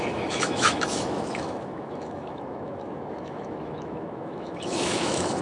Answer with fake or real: fake